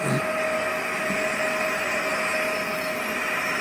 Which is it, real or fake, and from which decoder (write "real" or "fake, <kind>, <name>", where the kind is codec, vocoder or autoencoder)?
real